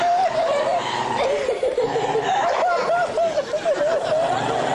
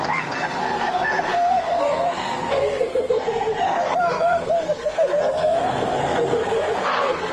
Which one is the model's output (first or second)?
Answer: second